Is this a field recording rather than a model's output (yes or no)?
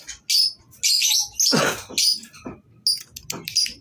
yes